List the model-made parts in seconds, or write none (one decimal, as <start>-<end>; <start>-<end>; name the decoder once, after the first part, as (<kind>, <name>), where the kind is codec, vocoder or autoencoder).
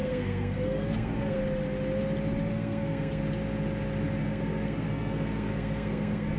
0.0-1.4 (codec, SNAC); 2.5-3.2; 4.2-6.4